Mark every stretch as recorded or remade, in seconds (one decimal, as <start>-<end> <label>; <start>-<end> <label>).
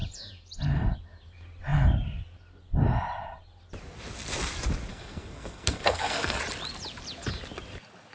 0.0-4.9 recorded; 4.9-6.4 remade; 6.4-8.1 recorded